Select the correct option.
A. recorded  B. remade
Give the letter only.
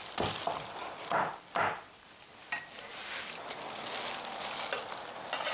A